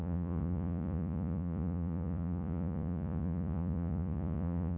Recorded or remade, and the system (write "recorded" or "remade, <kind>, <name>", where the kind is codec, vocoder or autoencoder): remade, vocoder, Vocos